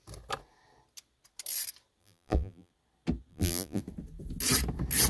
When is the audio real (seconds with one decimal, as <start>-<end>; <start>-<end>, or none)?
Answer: 0.0-2.0; 2.7-3.3; 3.8-5.1